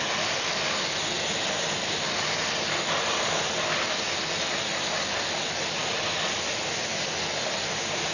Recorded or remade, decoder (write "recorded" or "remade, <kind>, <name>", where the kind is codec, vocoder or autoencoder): recorded